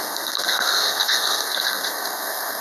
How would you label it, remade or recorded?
remade